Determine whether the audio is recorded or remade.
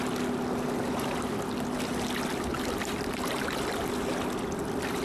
recorded